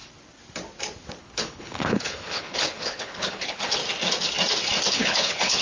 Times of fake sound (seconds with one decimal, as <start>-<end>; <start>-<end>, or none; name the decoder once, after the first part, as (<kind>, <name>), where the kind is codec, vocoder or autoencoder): 1.2-3.8 (codec, HILCodec); 4.9-5.6